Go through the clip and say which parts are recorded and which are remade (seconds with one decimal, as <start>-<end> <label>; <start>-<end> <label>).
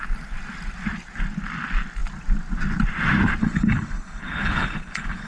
0.0-3.4 recorded; 3.4-5.3 remade